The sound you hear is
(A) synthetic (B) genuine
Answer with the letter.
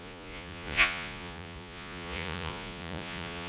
A